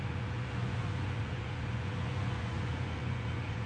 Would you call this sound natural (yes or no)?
no